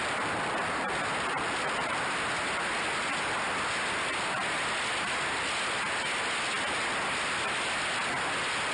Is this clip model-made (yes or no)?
no